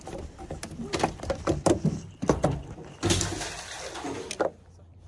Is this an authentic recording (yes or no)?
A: yes